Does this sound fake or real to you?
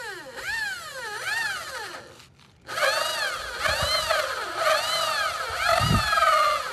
real